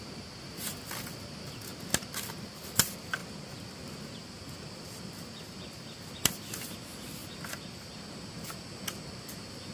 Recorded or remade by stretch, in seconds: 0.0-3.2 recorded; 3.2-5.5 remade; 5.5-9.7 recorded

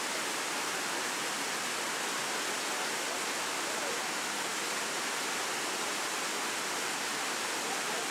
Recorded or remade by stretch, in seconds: 0.0-8.1 recorded

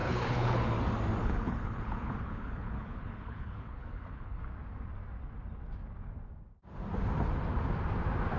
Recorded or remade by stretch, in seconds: 0.0-0.6 remade; 0.6-1.2 recorded; 1.2-4.4 remade; 4.4-8.4 recorded

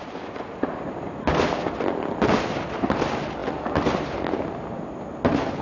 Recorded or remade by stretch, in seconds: 0.0-5.6 recorded

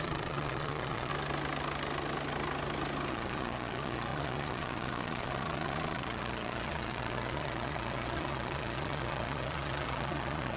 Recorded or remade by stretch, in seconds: 0.0-1.1 remade; 1.1-3.1 recorded; 3.1-10.6 remade